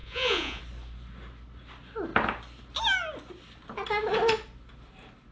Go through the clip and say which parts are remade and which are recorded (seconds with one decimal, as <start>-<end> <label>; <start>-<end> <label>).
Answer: 0.0-0.6 remade; 0.6-5.3 recorded